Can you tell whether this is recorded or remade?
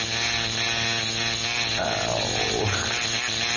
recorded